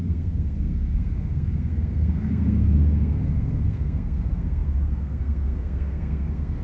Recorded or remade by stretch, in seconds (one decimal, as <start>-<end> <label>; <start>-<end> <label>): 0.0-6.6 remade

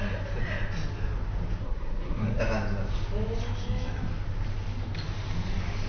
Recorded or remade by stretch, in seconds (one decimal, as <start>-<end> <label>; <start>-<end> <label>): 0.0-1.6 recorded; 1.6-2.4 remade; 2.4-5.9 recorded

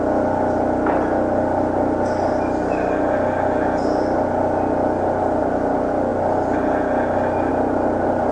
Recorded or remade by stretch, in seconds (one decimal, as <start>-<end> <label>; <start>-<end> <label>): 0.0-8.3 recorded

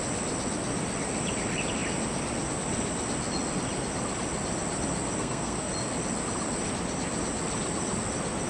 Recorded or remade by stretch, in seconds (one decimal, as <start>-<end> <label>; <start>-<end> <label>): 0.0-5.2 recorded; 5.2-5.7 remade; 5.7-8.5 recorded